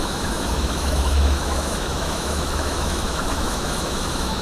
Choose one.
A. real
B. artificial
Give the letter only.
B